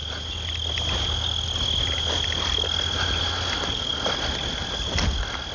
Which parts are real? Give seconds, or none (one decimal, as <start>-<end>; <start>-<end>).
0.0-5.5